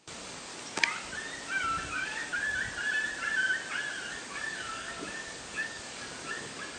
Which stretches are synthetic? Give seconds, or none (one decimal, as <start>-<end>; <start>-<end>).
0.0-0.5; 1.9-2.3; 4.1-6.8